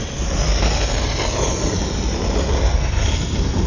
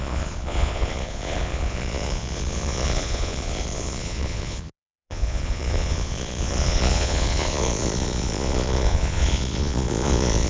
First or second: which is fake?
second